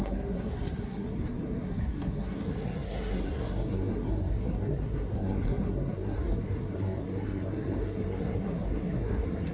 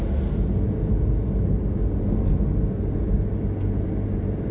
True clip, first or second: second